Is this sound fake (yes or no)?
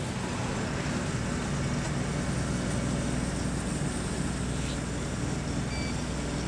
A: no